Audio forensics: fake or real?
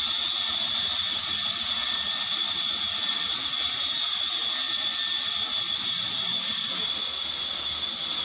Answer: real